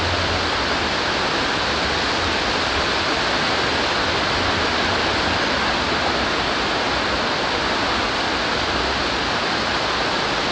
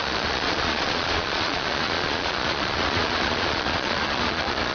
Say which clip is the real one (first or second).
first